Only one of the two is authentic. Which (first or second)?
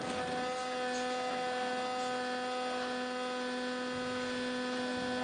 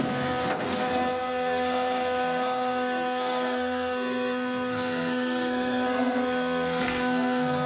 first